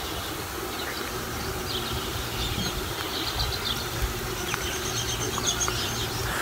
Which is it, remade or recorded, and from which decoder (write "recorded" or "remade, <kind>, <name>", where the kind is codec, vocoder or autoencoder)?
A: recorded